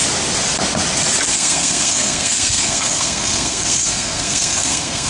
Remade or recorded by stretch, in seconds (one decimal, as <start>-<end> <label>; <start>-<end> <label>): 0.0-1.3 recorded; 1.3-5.1 remade